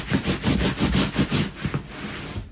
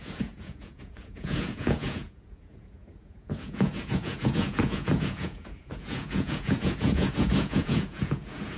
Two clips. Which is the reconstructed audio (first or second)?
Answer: second